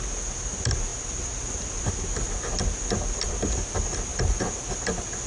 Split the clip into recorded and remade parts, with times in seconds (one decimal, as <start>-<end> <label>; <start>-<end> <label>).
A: 0.0-5.3 recorded